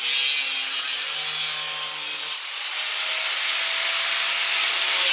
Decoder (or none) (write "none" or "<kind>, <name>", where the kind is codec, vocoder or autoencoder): none